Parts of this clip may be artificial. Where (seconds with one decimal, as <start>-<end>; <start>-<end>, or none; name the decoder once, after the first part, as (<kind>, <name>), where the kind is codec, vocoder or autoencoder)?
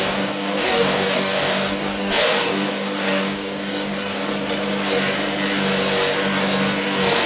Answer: 0.0-4.3 (codec, DAC); 6.8-7.3